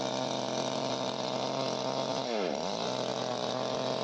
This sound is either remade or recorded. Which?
remade